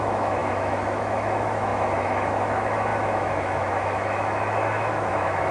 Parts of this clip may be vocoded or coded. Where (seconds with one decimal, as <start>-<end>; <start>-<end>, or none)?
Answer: 0.0-5.5